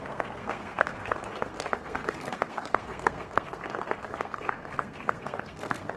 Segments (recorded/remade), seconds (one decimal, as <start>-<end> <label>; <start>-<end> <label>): 0.0-6.0 remade